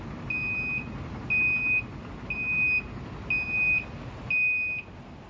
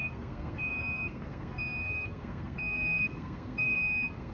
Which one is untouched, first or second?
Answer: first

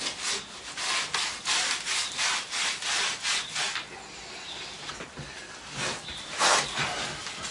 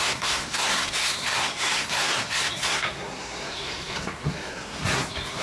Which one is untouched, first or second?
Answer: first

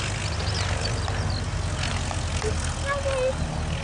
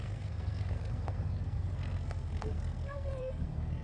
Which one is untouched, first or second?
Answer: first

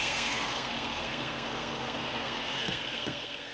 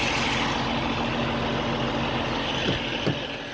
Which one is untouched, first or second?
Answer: second